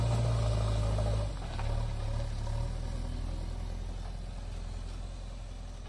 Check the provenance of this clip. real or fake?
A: real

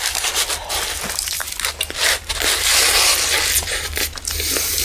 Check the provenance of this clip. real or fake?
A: real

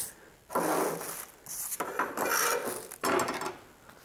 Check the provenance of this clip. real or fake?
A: real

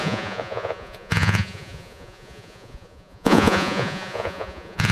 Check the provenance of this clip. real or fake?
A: fake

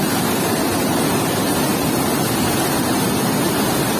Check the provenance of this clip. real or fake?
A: real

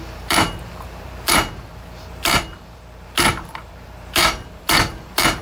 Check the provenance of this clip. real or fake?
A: fake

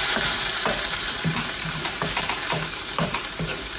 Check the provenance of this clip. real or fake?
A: fake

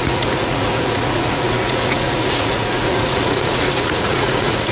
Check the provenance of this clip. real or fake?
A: fake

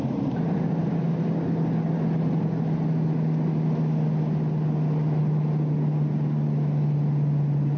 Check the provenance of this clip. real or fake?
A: real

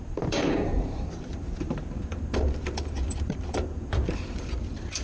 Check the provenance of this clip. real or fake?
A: fake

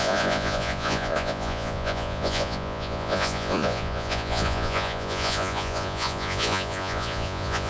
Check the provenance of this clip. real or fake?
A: fake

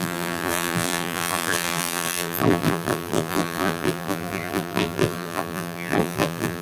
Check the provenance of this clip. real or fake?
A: fake